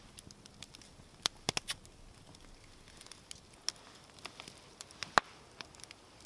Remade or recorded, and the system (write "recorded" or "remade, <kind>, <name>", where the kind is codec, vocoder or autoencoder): recorded